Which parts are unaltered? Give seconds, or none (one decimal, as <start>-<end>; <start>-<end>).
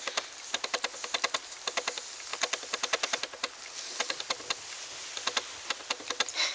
0.0-6.5